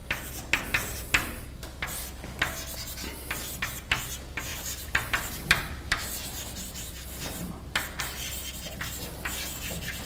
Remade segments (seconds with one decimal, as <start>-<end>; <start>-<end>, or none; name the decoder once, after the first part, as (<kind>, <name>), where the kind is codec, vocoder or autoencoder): 4.5-8.0 (vocoder, BigVGAN v2)